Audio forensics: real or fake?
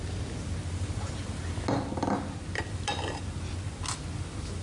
real